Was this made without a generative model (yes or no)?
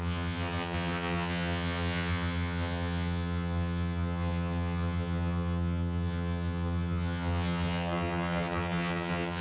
no